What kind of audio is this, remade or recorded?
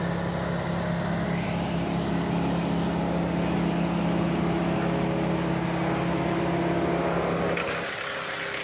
recorded